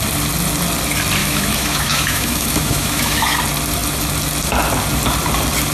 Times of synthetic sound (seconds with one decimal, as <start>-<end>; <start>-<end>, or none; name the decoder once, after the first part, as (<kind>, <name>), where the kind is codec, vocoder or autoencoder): 1.2-3.4 (autoencoder, DAC-VAE)